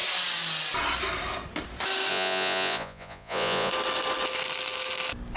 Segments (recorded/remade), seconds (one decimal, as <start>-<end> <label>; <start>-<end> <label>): 0.0-2.1 recorded; 2.1-3.7 remade; 3.7-5.4 recorded